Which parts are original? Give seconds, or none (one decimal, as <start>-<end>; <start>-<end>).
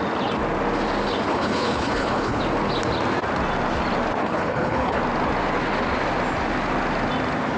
0.0-1.3; 2.4-4.2; 5.0-7.6